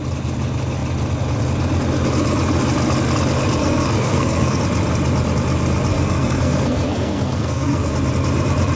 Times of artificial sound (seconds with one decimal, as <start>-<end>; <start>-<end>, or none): 3.6-4.6; 5.9-7.9